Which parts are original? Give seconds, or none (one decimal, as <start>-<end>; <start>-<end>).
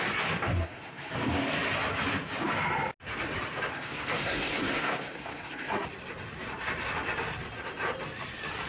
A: 0.0-0.5; 1.1-3.7; 5.9-8.7